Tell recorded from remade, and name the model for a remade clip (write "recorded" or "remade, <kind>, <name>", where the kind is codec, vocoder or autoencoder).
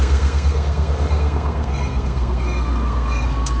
remade, codec, SNAC